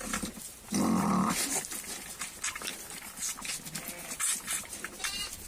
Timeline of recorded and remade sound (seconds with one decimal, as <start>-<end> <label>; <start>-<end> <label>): 0.0-5.5 recorded